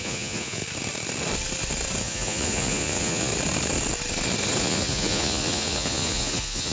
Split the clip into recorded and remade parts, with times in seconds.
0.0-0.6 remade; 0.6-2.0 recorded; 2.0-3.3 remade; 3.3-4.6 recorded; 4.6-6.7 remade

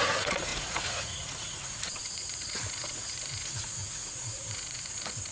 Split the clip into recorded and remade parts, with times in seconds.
0.0-5.3 remade

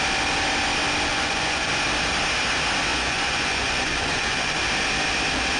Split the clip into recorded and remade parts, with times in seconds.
0.0-1.1 recorded; 1.1-1.7 remade; 1.7-2.9 recorded; 2.9-4.6 remade; 4.6-5.6 recorded

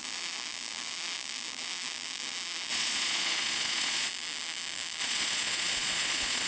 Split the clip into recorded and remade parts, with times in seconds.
0.0-2.7 recorded; 2.7-4.1 remade; 4.1-5.0 recorded; 5.0-6.5 remade